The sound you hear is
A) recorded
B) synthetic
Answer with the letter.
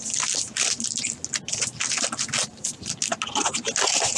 A